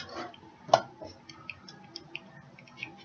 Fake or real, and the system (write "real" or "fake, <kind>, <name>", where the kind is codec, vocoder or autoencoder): real